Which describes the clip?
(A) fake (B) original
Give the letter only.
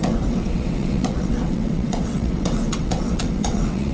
A